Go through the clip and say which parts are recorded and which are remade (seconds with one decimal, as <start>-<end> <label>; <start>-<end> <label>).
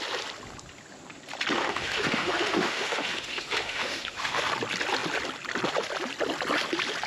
0.0-1.6 recorded; 1.6-4.5 remade; 4.5-7.1 recorded